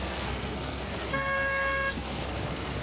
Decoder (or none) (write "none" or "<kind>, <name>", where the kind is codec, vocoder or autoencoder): codec, SNAC